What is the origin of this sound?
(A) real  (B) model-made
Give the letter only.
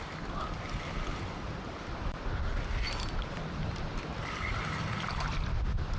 B